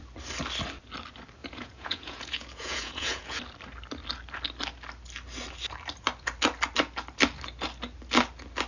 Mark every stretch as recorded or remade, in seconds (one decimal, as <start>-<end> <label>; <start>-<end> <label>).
0.0-1.4 recorded; 1.4-3.4 remade; 3.4-8.7 recorded